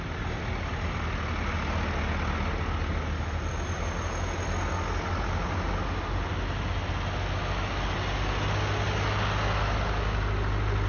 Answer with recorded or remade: recorded